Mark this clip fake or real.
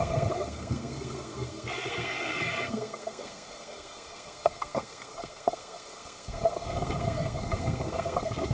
fake